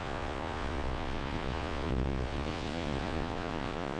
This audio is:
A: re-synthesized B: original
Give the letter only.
A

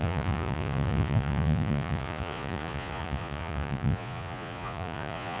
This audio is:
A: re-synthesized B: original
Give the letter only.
A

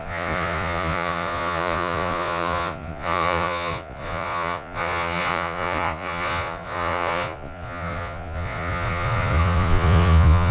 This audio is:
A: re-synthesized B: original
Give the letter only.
A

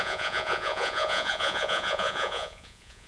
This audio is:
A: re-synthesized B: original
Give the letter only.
A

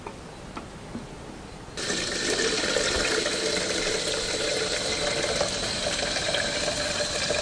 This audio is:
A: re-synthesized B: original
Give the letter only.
B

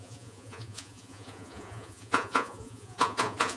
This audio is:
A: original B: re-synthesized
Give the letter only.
B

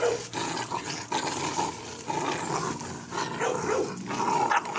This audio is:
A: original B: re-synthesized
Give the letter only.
A